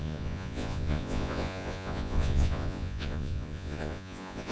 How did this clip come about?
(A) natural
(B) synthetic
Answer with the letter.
B